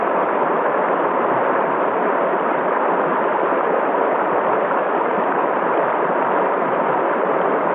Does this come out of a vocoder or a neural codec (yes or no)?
yes